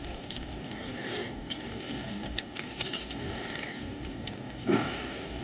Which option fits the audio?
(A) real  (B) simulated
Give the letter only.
B